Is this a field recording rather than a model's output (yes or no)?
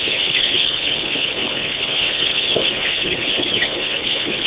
no